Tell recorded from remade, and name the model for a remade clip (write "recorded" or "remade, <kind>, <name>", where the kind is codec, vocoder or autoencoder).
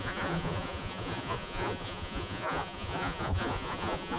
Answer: remade, vocoder, Vocos